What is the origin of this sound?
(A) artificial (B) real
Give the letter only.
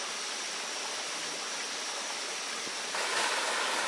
B